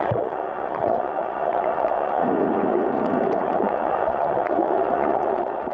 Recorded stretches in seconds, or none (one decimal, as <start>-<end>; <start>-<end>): none

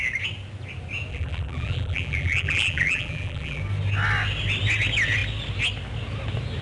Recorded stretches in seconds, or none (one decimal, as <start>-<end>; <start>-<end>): 0.0-1.1; 3.6-6.6

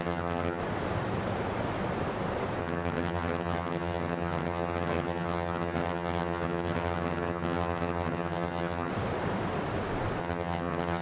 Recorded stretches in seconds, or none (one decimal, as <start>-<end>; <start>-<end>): 0.6-2.6; 8.9-10.2

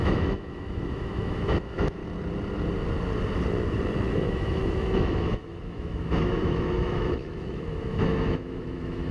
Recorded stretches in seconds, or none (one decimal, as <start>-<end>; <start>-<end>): 2.0-4.1

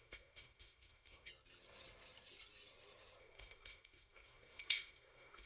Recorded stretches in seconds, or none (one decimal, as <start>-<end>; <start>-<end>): 1.3-3.2

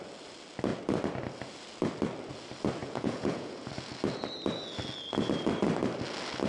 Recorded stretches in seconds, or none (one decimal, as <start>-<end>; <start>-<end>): 0.0-2.8; 3.7-6.5

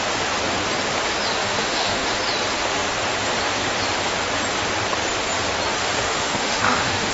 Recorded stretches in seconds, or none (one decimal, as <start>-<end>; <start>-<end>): 0.0-1.4; 2.2-5.8